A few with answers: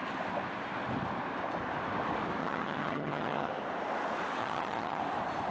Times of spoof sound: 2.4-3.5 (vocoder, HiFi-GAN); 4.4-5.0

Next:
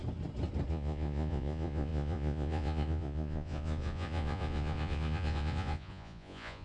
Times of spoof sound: 0.7-6.6 (vocoder, Vocos)